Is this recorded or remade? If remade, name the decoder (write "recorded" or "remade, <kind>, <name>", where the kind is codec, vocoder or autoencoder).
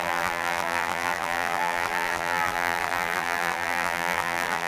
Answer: remade, vocoder, BigVGAN v2